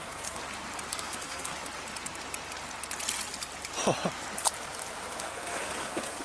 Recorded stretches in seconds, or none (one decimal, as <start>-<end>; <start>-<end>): 0.4-0.9; 1.5-5.2